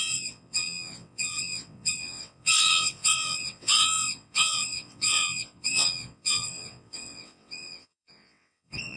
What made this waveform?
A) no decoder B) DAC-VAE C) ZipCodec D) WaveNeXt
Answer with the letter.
D